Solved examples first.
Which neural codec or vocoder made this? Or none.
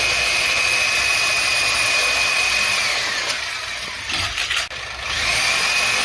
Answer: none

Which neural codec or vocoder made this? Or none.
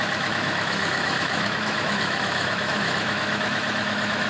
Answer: autoencoder, DAC-VAE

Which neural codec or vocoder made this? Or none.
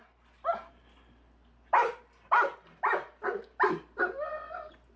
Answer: vocoder, BigVGAN v2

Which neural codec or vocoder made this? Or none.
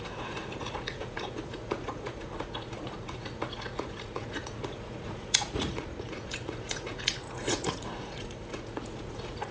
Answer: vocoder, Vocos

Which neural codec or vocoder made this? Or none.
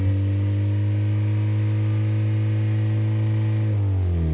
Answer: none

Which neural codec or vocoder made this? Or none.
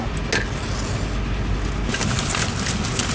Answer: none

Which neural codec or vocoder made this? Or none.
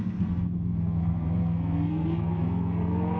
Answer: codec, SNAC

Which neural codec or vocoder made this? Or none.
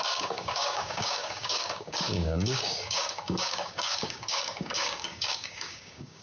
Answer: codec, DAC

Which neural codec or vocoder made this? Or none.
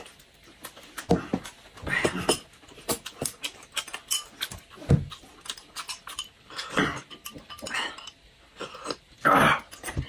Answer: none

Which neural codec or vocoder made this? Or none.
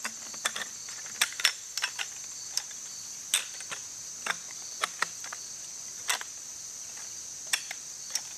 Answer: none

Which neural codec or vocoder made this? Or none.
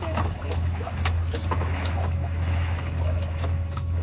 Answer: autoencoder, DAC-VAE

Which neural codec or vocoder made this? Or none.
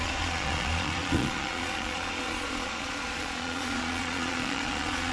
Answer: vocoder, Vocos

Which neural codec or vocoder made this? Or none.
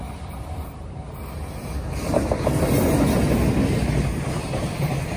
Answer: none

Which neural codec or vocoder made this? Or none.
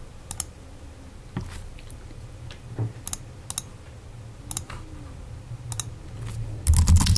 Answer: none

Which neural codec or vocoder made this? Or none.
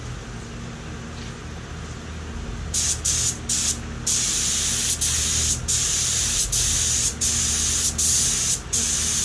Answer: none